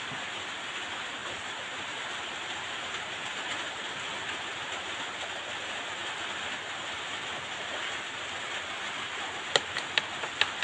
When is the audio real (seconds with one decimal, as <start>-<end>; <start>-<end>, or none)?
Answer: 0.0-1.2; 2.3-10.6